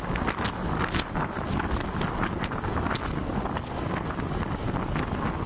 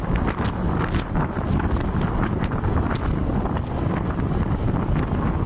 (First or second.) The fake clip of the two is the second